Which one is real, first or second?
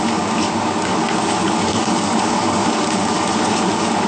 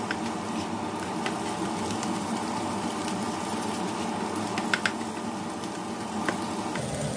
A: second